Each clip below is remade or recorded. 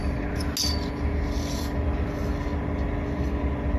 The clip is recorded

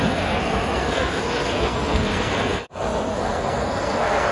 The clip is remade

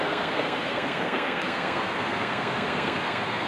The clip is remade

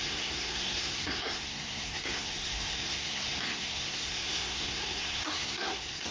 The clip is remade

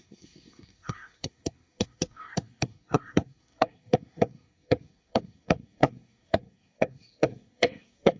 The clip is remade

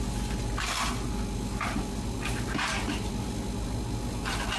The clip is recorded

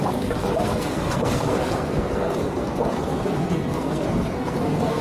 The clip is remade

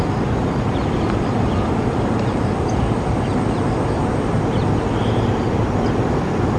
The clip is recorded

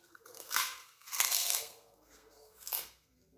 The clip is remade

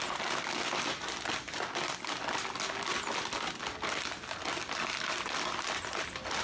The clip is recorded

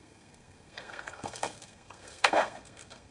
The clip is remade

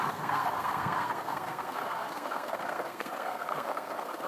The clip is remade